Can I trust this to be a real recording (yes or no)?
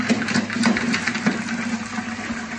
yes